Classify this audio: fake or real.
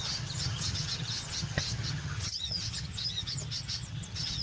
fake